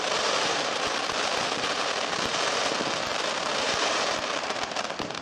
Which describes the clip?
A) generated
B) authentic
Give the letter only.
A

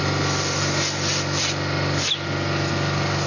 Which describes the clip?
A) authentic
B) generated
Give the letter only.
A